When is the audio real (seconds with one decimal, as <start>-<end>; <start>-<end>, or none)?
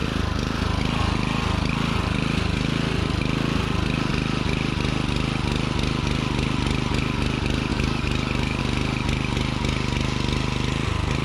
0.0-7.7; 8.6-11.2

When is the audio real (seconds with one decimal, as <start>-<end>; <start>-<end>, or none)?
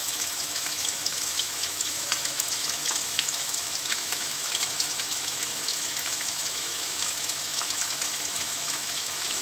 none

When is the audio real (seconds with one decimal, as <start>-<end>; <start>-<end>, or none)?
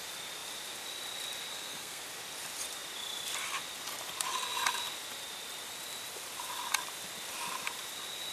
0.0-1.5; 2.0-8.3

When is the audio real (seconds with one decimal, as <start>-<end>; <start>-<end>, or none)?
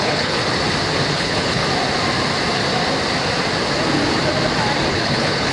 0.4-1.1; 1.6-4.9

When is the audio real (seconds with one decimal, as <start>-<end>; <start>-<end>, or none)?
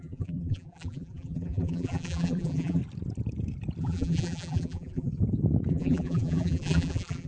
2.8-3.8; 5.1-5.7